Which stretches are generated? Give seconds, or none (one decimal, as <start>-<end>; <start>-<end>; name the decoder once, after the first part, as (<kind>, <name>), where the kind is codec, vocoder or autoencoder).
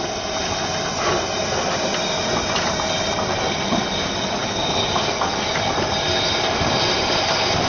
none